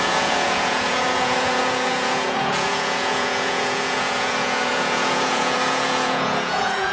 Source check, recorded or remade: remade